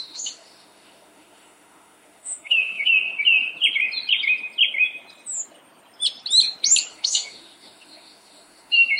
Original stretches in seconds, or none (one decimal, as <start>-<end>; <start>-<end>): 2.9-6.9